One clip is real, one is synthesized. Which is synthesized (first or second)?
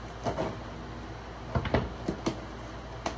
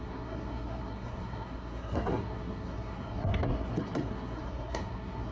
second